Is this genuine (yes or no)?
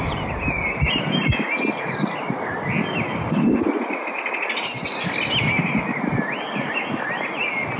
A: yes